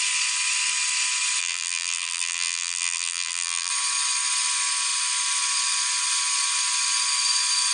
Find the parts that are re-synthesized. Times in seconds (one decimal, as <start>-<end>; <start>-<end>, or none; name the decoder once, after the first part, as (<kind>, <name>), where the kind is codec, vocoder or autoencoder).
1.4-3.7 (vocoder, BigVGAN v2)